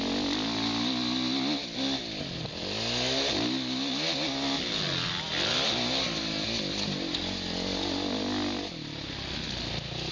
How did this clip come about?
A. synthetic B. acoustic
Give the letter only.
B